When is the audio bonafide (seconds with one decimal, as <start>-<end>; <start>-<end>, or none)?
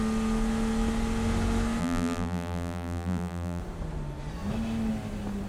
0.0-1.8; 3.6-5.5